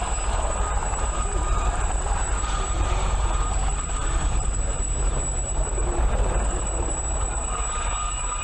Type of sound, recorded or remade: remade